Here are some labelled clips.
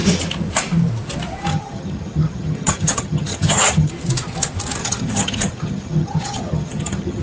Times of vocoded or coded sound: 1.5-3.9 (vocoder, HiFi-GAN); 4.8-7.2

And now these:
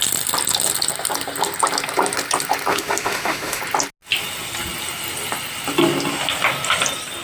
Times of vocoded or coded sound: 2.7-3.6 (autoencoder, DAC-VAE)

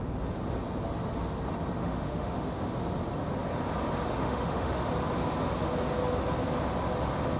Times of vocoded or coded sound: 1.8-2.7 (autoencoder, DAC-VAE); 4.1-4.9

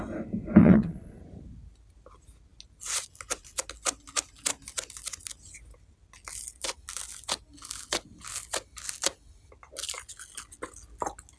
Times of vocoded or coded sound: 0.6-1.2 (vocoder, Vocos)

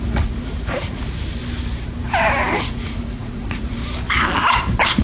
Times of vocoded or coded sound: 0.0-1.4 (vocoder, Vocos); 2.6-3.8

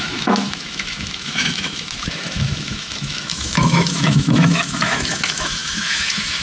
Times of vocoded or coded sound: 0.0-6.4 (autoencoder, DAC-VAE)

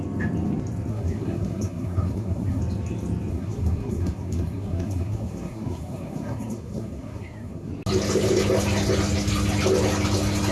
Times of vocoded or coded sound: 0.9-2.6 (codec, SNAC); 3.3-7.7

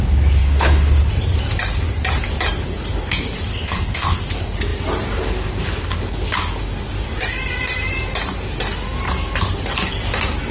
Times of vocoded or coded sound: 0.4-1.1 (codec, HILCodec); 3.5-4.2